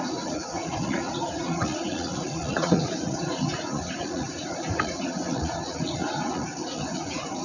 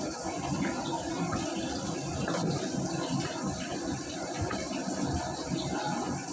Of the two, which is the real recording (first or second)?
second